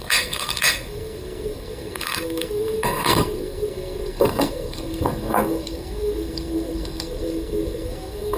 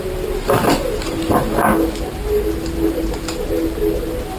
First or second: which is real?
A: second